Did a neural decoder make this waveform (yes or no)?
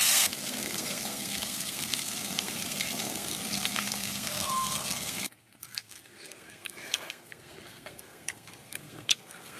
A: yes